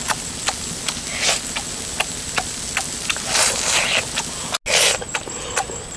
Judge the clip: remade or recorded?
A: recorded